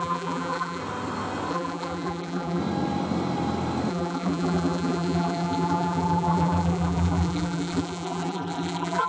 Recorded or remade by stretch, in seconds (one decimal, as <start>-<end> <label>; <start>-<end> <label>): 0.0-0.8 remade; 0.8-1.5 recorded; 1.5-2.6 remade; 2.6-3.9 recorded; 3.9-9.1 remade